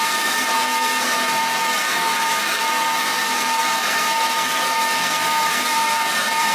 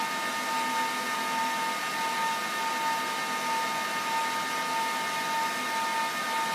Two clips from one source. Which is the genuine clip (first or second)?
second